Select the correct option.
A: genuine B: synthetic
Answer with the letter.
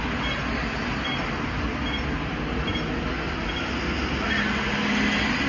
A